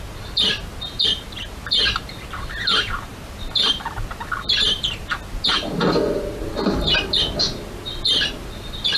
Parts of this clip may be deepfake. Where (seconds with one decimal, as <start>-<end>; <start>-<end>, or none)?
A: 3.1-5.2